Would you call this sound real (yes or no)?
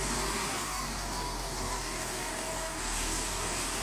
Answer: no